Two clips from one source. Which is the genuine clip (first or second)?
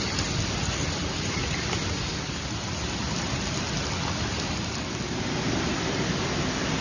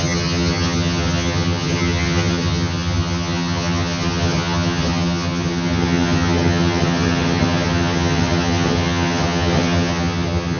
first